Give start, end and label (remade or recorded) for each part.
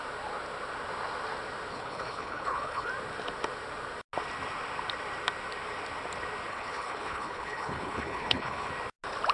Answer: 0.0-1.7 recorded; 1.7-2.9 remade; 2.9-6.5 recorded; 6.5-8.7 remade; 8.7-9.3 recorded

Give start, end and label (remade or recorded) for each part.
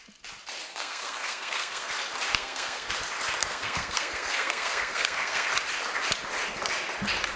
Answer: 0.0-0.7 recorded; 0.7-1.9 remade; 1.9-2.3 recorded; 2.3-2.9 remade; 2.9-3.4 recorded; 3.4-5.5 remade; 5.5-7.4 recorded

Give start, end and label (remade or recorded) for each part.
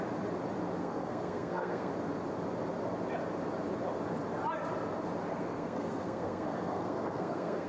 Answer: 0.0-0.8 recorded; 0.8-1.9 remade; 1.9-5.3 recorded; 5.3-7.7 remade